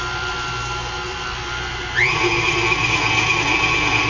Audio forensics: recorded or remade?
recorded